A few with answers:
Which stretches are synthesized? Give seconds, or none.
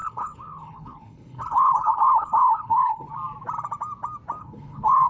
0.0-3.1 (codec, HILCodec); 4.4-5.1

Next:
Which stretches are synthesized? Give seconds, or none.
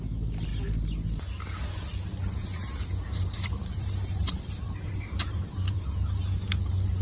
2.4-5.8 (vocoder, BigVGAN v2)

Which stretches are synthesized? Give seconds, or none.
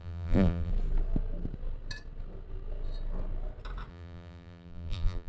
0.0-0.7 (vocoder, BigVGAN v2); 3.9-5.3